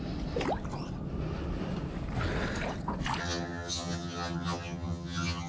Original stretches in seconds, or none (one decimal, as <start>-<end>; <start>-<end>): 0.0-3.2